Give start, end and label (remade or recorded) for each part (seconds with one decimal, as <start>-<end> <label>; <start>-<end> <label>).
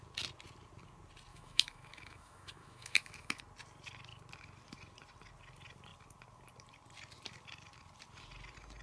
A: 0.0-1.3 recorded; 1.3-3.4 remade; 3.4-8.8 recorded